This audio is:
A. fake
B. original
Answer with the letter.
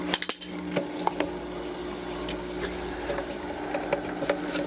B